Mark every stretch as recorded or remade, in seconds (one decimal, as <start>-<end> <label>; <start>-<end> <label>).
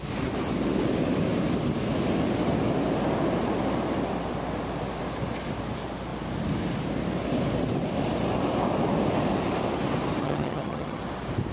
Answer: 0.0-10.2 recorded; 10.2-11.0 remade; 11.0-11.5 recorded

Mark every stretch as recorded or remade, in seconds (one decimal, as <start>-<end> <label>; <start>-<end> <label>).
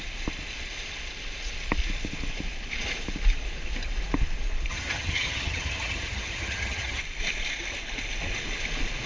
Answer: 0.0-4.7 recorded; 4.7-7.0 remade; 7.0-9.1 recorded